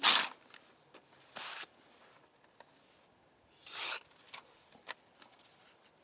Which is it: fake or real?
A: real